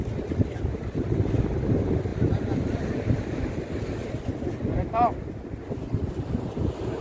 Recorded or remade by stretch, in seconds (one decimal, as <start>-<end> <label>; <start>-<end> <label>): 0.0-7.0 recorded